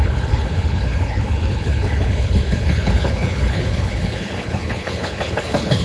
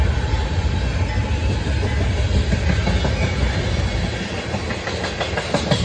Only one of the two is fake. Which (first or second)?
first